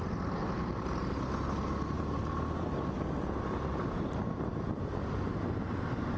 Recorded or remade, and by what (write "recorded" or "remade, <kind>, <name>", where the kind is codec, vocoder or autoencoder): recorded